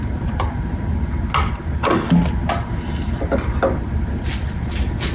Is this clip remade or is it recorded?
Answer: recorded